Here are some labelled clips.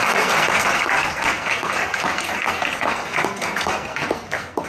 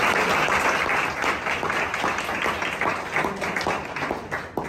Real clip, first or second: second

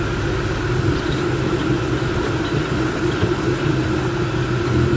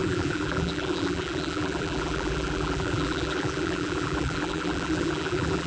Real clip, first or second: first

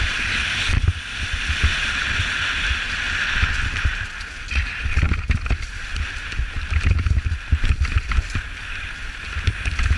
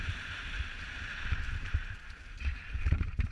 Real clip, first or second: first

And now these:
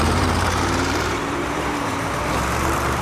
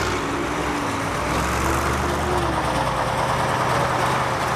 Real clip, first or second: second